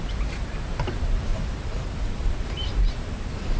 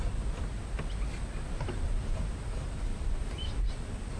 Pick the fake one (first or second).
first